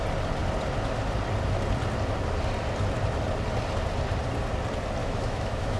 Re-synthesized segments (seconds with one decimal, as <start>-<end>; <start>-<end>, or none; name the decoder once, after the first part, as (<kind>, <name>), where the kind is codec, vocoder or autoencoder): 5.0-5.8 (autoencoder, DAC-VAE)